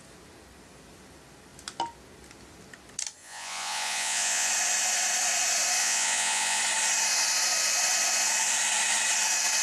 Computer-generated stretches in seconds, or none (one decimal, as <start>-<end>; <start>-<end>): 3.2-4.5; 5.8-6.6